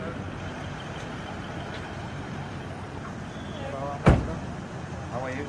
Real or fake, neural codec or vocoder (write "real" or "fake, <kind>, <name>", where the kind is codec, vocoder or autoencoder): real